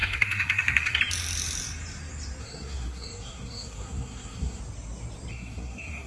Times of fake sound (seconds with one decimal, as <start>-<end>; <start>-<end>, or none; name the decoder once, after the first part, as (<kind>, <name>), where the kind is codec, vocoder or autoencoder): 0.0-1.0 (codec, SNAC); 2.4-4.6; 5.3-6.1